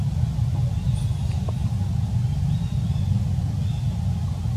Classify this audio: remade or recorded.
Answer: recorded